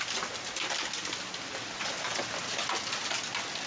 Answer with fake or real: real